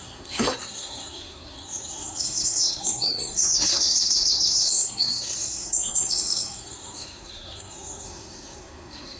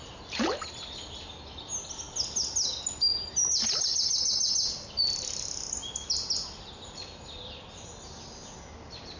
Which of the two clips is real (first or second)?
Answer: second